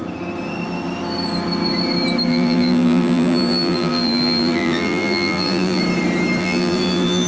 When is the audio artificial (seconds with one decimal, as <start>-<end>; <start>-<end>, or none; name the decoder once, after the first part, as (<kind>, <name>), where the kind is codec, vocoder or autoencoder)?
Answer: 2.3-5.8 (vocoder, BigVGAN v2); 6.4-7.3